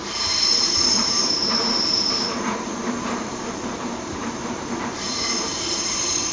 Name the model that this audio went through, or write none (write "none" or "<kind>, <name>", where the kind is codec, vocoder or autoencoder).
vocoder, BigVGAN v2